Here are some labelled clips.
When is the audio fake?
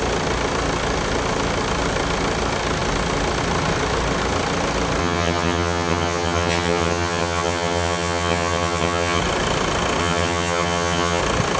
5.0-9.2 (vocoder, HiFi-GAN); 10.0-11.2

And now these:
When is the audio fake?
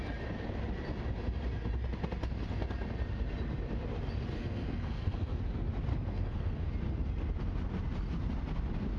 4.4-5.4 (codec, SNAC); 5.9-6.7